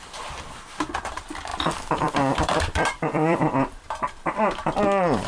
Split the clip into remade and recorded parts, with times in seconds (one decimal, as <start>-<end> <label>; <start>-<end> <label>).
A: 0.0-1.5 recorded; 1.5-4.0 remade; 4.0-5.3 recorded